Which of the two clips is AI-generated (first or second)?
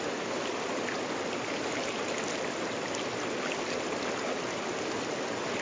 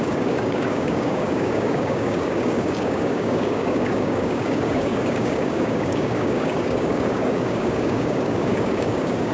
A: second